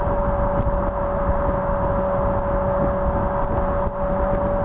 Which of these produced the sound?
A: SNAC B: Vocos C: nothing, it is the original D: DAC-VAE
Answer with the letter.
C